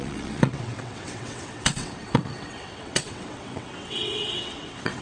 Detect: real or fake fake